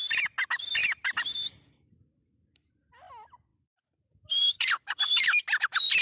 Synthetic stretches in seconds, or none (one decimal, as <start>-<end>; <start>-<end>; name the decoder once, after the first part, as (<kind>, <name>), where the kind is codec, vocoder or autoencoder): none